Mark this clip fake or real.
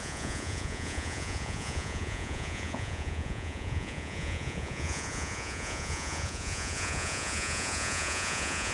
fake